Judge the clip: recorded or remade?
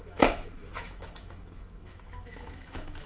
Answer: remade